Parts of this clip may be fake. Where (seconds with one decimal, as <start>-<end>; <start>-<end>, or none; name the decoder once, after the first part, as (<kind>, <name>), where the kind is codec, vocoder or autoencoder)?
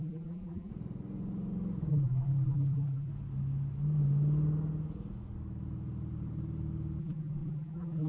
0.0-0.7 (vocoder, BigVGAN v2); 1.9-3.1; 7.0-8.1